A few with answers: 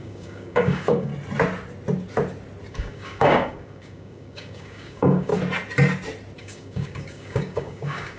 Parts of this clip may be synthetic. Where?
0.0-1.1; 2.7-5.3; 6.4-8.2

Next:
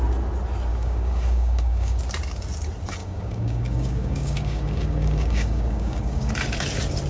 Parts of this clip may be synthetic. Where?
0.7-2.0; 3.0-6.3

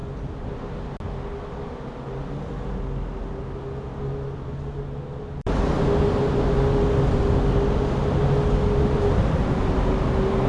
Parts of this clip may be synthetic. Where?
none